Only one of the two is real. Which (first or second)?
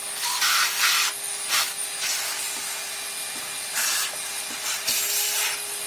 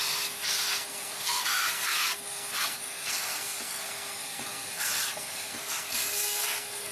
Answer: first